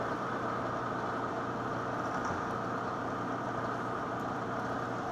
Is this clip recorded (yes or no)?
yes